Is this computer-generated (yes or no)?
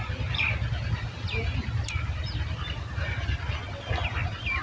no